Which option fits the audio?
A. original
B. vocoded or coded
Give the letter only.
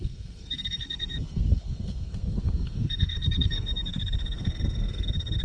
B